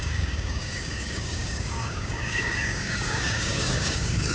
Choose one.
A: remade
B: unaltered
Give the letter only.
A